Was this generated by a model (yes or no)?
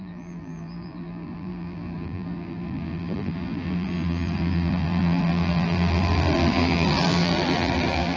yes